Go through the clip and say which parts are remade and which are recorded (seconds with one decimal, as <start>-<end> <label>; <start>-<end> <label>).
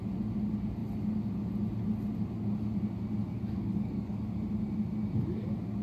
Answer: 0.0-3.2 recorded; 3.2-4.2 remade; 4.2-5.8 recorded